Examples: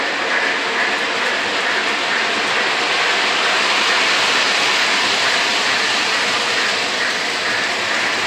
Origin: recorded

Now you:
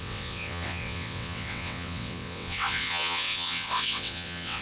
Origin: remade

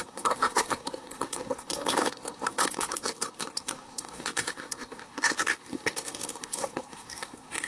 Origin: remade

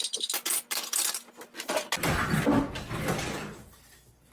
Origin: recorded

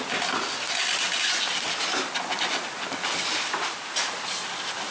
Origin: recorded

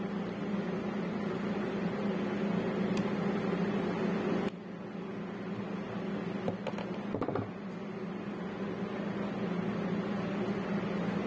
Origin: recorded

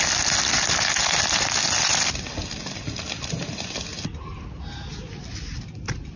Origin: recorded